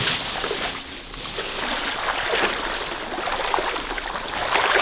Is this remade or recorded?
recorded